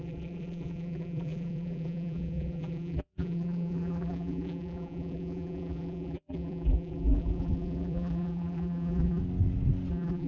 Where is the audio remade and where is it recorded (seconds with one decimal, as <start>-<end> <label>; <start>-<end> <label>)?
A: 0.0-9.2 remade; 9.2-9.9 recorded; 9.9-10.3 remade

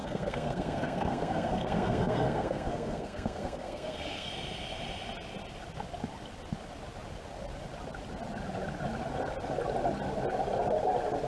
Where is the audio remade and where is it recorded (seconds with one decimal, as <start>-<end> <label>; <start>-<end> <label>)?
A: 0.0-4.3 remade; 4.3-11.3 recorded

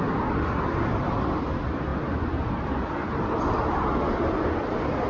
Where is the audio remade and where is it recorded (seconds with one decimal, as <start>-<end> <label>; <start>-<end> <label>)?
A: 0.0-5.1 recorded

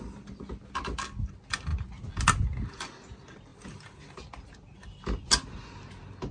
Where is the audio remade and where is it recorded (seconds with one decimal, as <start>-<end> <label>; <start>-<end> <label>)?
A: 0.0-6.3 recorded

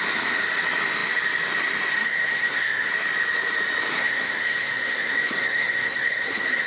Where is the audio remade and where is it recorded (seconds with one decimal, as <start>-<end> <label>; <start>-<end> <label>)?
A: 0.0-1.9 recorded; 1.9-2.9 remade; 2.9-3.9 recorded; 3.9-6.7 remade